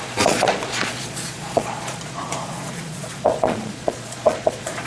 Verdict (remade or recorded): remade